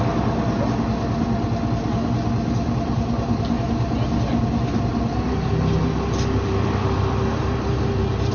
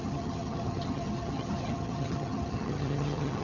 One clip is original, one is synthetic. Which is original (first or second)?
first